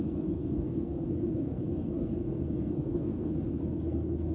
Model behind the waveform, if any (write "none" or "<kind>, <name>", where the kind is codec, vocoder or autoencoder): codec, SNAC